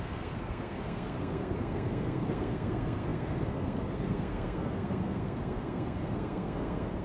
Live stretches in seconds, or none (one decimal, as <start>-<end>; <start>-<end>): none